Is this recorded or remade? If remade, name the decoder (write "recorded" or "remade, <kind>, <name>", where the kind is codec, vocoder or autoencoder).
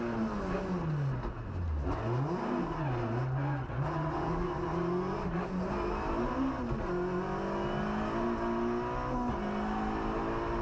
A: recorded